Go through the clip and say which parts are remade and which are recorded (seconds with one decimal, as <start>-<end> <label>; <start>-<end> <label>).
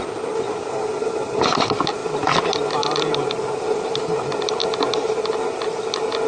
0.0-6.3 recorded